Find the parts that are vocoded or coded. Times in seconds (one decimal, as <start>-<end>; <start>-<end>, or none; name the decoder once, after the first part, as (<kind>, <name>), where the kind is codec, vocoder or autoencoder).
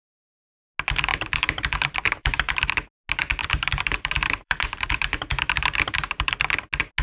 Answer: 1.1-2.7 (vocoder, BigVGAN v2); 3.4-6.4